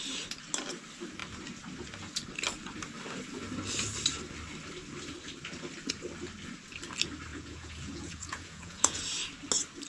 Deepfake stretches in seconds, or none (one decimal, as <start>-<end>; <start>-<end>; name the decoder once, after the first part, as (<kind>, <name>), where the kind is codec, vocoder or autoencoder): 7.3-9.0 (vocoder, Vocos)